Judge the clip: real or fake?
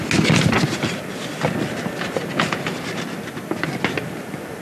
real